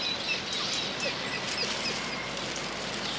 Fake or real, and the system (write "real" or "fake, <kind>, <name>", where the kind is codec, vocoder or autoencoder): real